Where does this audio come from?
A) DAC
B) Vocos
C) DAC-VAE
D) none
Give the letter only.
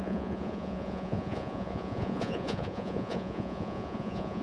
B